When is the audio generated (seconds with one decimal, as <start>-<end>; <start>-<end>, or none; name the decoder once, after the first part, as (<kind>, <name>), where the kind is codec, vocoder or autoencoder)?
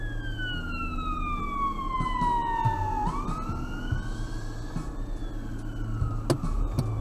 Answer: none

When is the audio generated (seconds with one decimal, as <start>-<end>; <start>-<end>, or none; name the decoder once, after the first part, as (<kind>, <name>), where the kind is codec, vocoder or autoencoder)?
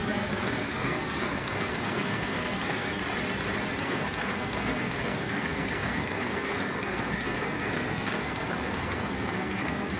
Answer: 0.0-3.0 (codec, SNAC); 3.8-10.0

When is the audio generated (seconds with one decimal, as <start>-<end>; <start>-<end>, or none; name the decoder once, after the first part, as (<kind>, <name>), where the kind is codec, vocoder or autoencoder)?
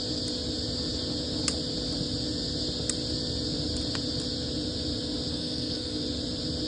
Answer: 5.3-6.0 (codec, SNAC)